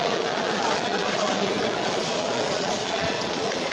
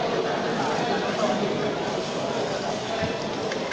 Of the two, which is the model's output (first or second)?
first